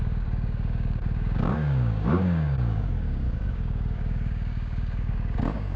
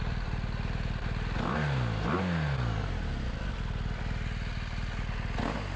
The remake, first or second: first